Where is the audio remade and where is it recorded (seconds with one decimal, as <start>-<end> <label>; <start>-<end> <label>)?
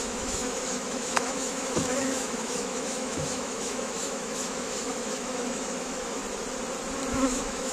0.0-6.2 remade; 6.2-7.1 recorded; 7.1-7.7 remade